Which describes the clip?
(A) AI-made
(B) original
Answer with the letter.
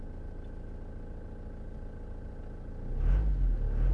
B